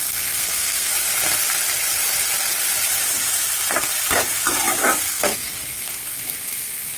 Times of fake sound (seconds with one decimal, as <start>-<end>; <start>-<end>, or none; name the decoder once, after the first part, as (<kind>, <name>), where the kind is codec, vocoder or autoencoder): 0.0-0.9 (codec, SNAC); 5.1-7.0